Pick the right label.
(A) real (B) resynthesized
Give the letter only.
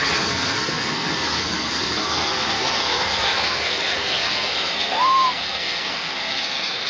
B